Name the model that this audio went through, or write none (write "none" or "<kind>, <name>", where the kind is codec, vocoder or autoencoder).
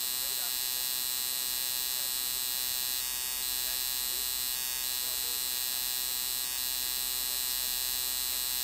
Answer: none